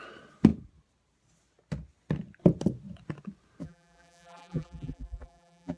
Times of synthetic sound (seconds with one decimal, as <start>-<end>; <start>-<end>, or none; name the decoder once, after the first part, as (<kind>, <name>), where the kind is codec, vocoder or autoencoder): 3.6-5.8 (vocoder, BigVGAN v2)